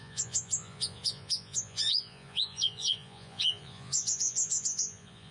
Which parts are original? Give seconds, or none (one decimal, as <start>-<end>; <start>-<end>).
none